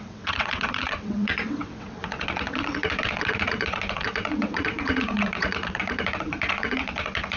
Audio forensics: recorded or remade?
remade